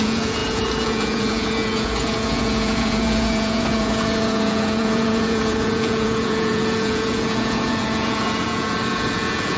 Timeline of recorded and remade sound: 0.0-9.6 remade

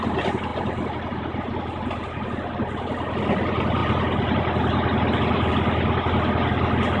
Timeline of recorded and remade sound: 0.0-7.0 recorded

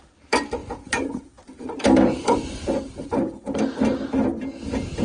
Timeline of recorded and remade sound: 0.0-0.6 recorded; 0.6-3.6 remade; 3.6-5.0 recorded